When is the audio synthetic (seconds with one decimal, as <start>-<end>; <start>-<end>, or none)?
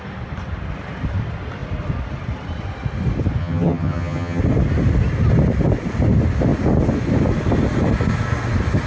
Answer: 3.4-4.4